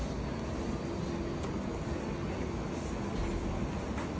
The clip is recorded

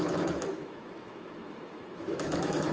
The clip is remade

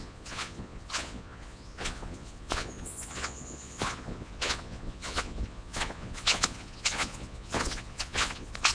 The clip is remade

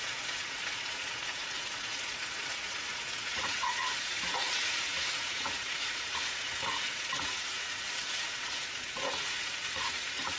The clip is remade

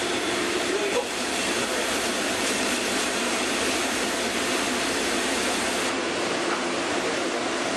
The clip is remade